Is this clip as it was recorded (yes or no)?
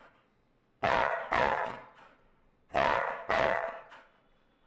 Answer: no